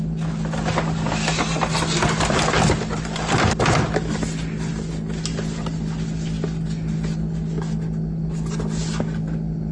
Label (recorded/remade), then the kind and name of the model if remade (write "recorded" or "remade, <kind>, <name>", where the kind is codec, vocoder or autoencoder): recorded